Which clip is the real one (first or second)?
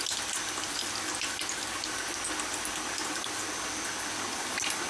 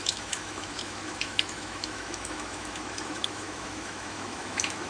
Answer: first